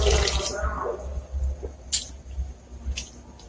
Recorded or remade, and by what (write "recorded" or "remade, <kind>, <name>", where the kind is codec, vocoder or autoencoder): recorded